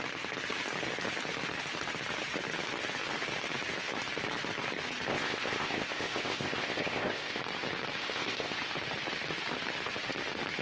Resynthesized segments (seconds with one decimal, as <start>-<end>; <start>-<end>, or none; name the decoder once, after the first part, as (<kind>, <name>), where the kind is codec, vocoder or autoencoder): 5.1-7.4 (codec, ZipCodec); 8.0-8.6